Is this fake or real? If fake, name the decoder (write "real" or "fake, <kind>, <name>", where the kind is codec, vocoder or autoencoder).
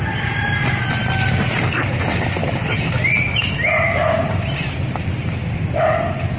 real